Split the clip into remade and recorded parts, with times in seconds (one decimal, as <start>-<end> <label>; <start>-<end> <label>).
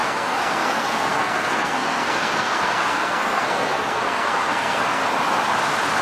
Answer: 0.0-5.0 remade; 5.0-6.0 recorded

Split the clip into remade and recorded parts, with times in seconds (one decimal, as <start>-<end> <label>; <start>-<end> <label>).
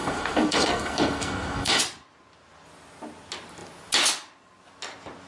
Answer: 0.0-1.8 remade; 1.8-5.3 recorded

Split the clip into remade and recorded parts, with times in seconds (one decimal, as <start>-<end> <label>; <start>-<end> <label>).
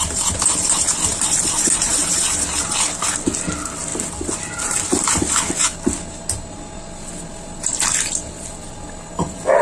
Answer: 0.0-9.6 recorded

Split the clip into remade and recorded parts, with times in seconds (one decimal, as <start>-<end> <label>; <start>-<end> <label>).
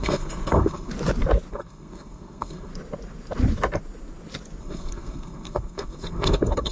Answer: 0.0-0.9 remade; 0.9-1.5 recorded; 1.5-2.7 remade; 2.7-4.6 recorded; 4.6-6.7 remade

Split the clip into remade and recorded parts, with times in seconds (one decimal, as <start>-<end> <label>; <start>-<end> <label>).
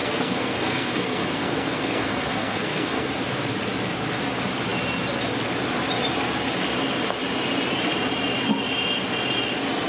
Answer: 0.0-3.1 remade; 3.1-9.9 recorded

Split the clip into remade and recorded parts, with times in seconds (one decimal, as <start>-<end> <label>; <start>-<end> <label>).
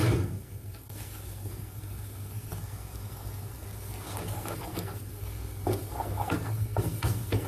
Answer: 0.0-7.5 remade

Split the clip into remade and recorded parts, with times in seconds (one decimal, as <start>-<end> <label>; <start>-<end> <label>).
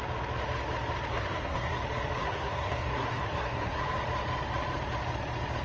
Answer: 0.0-1.1 recorded; 1.1-1.8 remade; 1.8-2.2 recorded; 2.2-3.8 remade; 3.8-5.6 recorded